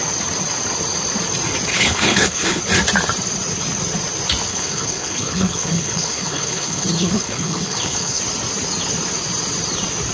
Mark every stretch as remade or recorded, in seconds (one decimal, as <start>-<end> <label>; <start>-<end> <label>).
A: 0.0-1.7 recorded; 1.7-2.6 remade; 2.6-4.5 recorded; 4.5-8.2 remade; 8.2-10.1 recorded